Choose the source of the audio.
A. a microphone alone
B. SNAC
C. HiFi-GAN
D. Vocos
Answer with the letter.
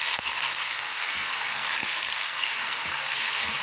B